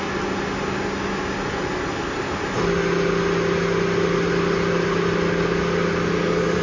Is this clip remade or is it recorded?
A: recorded